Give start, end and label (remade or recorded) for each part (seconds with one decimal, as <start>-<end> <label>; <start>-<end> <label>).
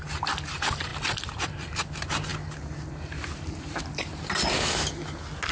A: 0.0-0.5 recorded; 0.5-0.9 remade; 0.9-1.4 recorded; 1.4-2.3 remade; 2.3-2.9 recorded; 2.9-4.1 remade; 4.1-5.5 recorded